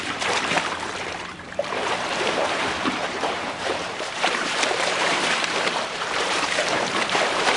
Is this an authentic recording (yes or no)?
no